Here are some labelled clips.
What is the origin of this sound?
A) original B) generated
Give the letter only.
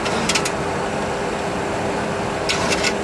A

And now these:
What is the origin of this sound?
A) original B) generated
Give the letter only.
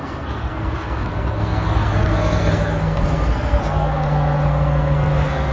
B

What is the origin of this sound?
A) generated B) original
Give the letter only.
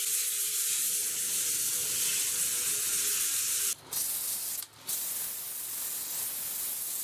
B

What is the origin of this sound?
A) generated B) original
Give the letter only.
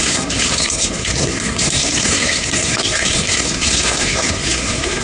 A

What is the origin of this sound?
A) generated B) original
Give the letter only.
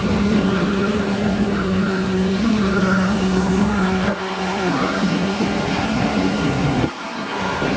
A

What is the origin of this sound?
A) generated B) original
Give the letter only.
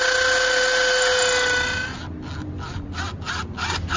B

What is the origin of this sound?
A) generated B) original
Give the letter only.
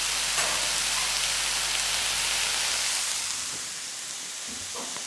B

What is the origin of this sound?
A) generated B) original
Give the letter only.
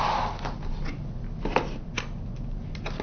B